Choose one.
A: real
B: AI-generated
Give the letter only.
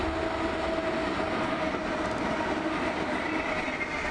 A